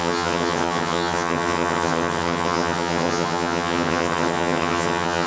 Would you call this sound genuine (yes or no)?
no